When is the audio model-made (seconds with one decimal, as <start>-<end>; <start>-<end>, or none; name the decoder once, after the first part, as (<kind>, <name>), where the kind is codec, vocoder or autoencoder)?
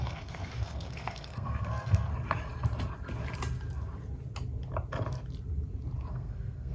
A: 0.0-2.1 (codec, SNAC); 6.1-6.7